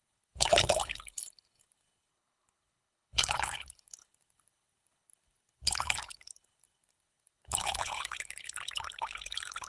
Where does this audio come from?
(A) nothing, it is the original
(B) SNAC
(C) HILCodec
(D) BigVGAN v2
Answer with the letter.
C